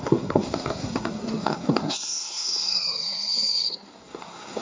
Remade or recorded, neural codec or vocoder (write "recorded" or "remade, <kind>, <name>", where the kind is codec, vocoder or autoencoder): remade, codec, SNAC